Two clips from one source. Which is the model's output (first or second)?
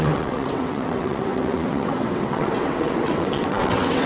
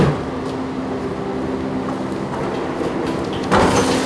first